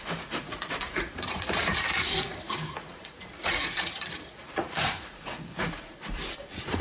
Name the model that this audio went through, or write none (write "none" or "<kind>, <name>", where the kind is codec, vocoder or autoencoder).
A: vocoder, Vocos